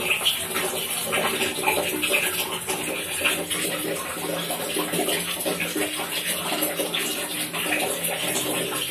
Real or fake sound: real